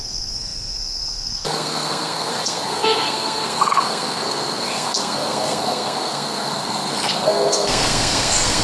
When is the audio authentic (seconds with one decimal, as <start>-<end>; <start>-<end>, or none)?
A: none